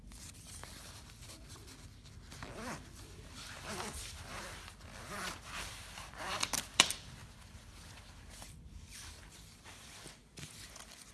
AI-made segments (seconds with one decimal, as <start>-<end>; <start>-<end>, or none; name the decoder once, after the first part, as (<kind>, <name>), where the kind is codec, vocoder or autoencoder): 0.0-10.2 (vocoder, BigVGAN v2)